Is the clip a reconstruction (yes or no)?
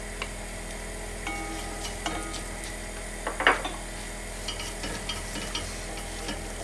no